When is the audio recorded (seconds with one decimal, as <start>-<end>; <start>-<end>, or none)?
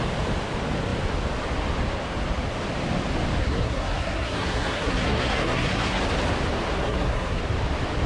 0.0-3.4; 6.0-6.8; 7.4-8.1